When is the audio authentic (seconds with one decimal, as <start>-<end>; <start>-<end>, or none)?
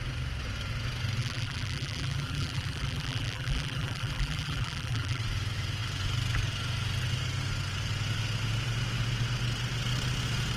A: 0.0-1.2; 5.2-10.6